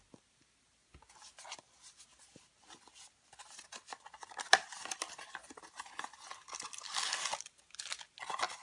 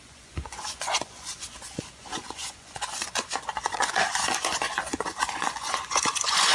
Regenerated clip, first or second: second